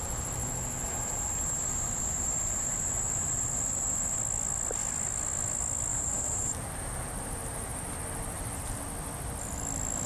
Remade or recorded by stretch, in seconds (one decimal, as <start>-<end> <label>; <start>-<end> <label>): 0.0-4.2 remade; 4.2-5.9 recorded; 5.9-8.8 remade; 8.8-10.1 recorded